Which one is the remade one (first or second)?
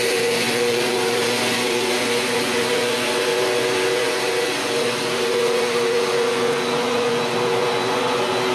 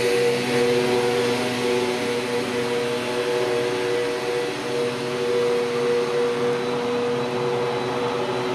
first